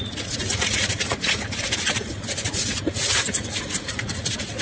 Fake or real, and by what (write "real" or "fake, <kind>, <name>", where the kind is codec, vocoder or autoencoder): fake, vocoder, Vocos